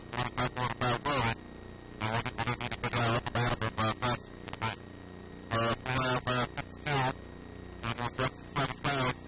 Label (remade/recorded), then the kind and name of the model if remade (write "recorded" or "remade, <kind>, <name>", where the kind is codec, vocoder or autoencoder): recorded